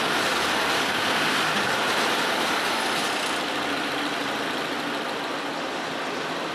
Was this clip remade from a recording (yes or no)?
yes